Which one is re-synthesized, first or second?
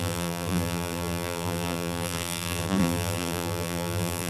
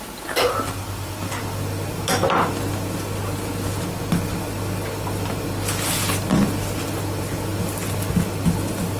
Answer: first